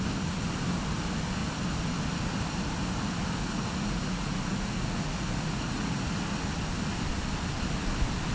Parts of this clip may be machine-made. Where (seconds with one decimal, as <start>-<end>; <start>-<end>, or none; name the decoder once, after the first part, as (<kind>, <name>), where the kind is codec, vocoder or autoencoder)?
3.4-6.0 (vocoder, Vocos)

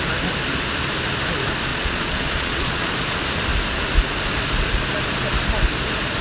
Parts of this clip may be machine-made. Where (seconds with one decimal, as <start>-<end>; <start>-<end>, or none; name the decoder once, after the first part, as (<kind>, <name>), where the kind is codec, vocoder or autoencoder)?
1.7-2.9 (vocoder, Vocos)